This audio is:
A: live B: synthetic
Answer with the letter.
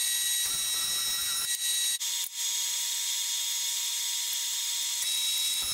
A